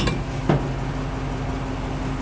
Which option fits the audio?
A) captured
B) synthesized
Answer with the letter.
A